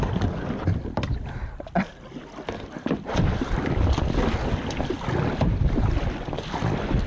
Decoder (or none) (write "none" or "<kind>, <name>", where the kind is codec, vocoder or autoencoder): none